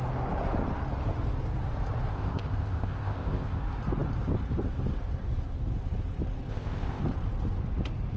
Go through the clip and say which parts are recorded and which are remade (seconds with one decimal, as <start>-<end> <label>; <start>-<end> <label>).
0.0-2.1 recorded; 2.1-3.6 remade; 3.6-6.5 recorded; 6.5-7.0 remade; 7.0-8.2 recorded